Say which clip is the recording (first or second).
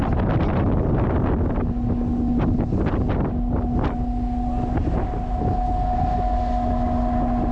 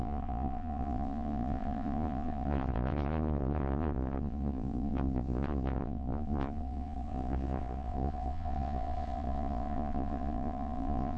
first